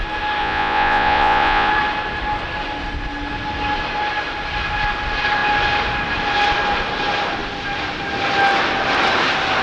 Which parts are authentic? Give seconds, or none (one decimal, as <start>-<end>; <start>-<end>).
0.0-0.4; 1.7-9.6